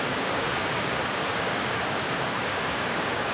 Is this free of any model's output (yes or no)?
no